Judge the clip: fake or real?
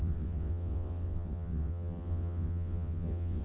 fake